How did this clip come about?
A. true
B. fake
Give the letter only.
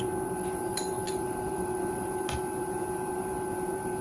B